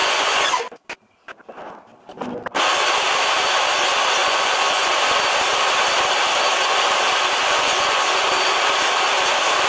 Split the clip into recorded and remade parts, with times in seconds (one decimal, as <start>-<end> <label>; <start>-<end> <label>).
0.0-0.6 remade; 0.6-4.2 recorded; 4.2-4.9 remade; 4.9-7.4 recorded; 7.4-8.3 remade; 8.3-9.7 recorded